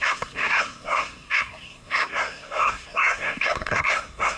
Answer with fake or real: fake